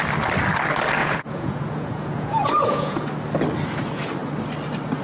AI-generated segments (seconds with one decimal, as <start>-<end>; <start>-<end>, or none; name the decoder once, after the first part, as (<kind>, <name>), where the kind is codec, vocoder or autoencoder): 1.0-3.1 (vocoder, Vocos)